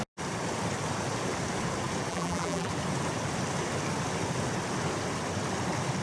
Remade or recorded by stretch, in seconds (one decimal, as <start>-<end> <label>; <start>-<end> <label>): 0.0-2.1 recorded; 2.1-2.7 remade; 2.7-6.0 recorded